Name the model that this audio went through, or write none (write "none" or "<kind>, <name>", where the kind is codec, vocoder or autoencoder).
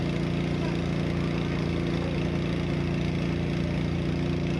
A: none